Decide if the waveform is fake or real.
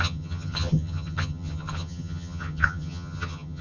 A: fake